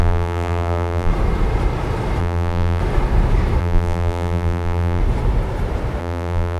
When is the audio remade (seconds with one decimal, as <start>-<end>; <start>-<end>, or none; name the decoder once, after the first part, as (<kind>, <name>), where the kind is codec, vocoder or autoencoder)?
0.0-1.1 (vocoder, BigVGAN v2); 2.2-2.8; 3.6-5.0; 6.0-6.6